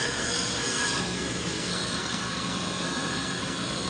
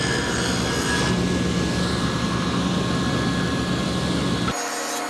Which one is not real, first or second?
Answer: first